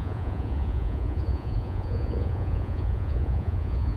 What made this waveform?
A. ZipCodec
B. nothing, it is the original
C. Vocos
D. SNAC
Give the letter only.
C